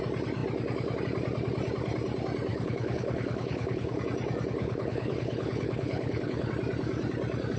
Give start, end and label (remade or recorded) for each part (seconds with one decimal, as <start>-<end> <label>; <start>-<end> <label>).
0.0-2.5 recorded; 2.5-4.0 remade; 4.0-4.6 recorded; 4.6-6.5 remade; 6.5-7.6 recorded